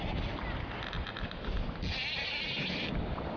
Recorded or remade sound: recorded